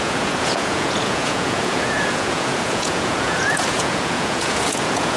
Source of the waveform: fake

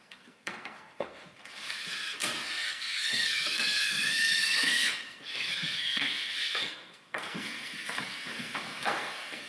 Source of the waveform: fake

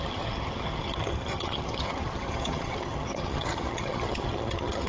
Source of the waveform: fake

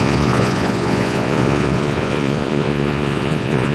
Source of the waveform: fake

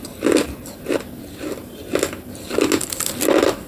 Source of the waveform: real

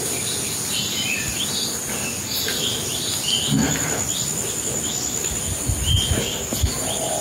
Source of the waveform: real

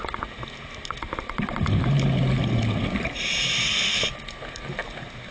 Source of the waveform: real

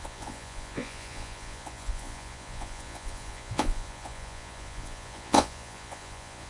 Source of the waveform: fake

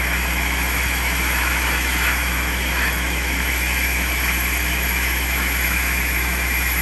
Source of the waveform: fake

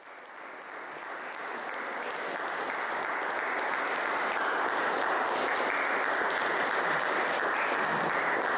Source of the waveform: real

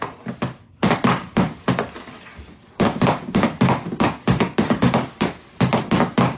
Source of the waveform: real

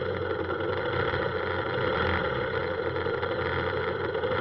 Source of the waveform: real